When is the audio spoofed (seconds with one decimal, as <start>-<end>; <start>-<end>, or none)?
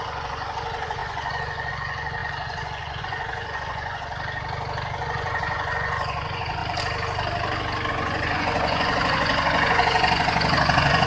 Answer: 0.0-4.1; 5.0-6.6; 7.9-11.1